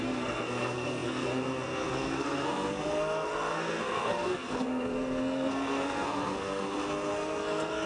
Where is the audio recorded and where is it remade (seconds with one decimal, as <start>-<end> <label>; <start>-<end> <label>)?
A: 0.0-7.9 remade